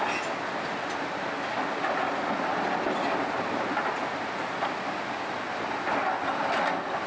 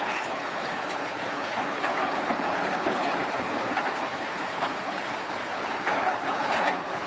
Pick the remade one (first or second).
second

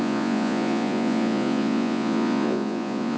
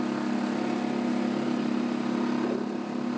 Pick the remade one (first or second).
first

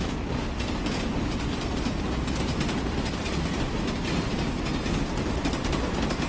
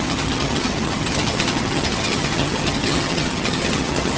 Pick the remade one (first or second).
second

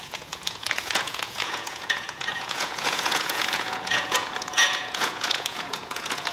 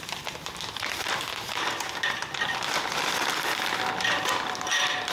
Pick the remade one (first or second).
first